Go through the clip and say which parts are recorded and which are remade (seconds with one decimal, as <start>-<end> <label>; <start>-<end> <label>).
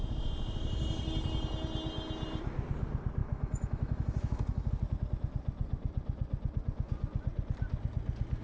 0.0-3.2 recorded; 3.2-4.7 remade; 4.7-8.4 recorded